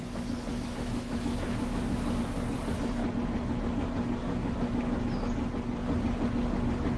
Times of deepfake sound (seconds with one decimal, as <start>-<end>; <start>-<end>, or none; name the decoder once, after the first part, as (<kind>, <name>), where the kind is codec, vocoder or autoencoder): 0.0-2.2 (autoencoder, DAC-VAE); 4.2-5.0